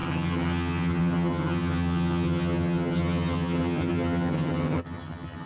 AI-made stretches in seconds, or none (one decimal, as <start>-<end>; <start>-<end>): 0.0-5.5